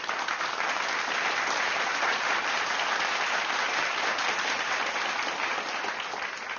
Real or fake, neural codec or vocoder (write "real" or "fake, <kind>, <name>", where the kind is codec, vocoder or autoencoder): real